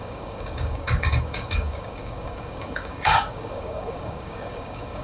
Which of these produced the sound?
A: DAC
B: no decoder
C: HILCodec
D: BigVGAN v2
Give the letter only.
A